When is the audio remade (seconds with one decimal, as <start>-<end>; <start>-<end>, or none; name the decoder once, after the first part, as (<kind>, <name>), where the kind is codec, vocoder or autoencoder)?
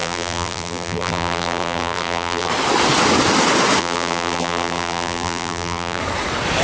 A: 0.0-2.5 (vocoder, BigVGAN v2); 3.8-6.0